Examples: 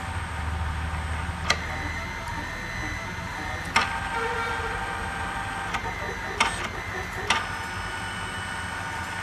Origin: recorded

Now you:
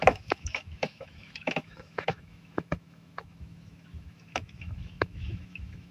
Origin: remade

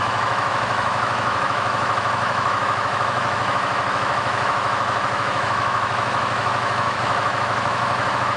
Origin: remade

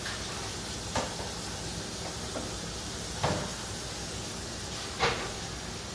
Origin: recorded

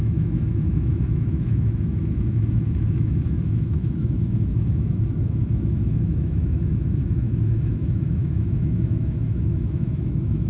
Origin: remade